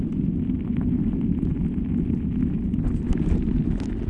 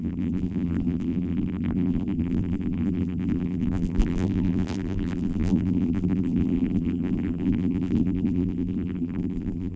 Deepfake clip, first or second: second